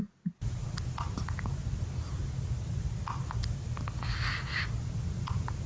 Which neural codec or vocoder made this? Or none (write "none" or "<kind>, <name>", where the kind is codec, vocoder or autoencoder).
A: none